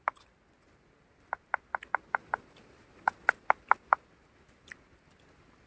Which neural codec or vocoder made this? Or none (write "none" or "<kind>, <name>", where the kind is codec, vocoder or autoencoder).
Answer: none